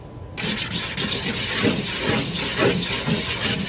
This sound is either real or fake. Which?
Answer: real